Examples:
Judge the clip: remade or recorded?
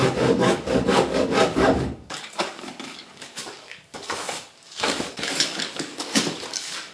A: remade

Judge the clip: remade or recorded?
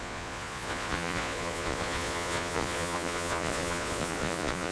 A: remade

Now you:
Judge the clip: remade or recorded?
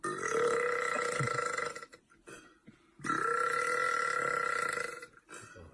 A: recorded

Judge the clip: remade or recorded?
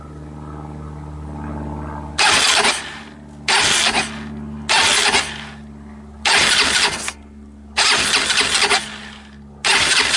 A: recorded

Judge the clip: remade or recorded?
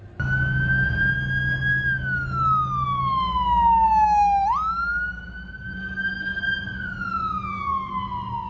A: recorded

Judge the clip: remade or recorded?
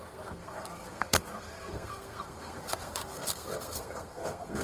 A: remade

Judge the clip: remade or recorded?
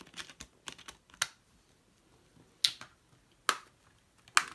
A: recorded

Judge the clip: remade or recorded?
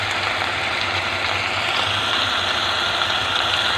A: recorded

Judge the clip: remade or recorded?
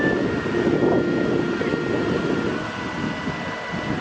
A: recorded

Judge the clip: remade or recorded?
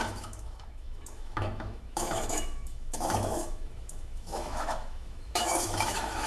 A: remade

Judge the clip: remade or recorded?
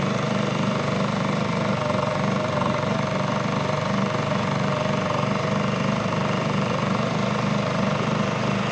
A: remade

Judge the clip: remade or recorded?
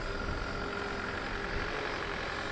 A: recorded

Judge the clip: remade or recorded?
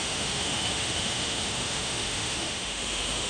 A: remade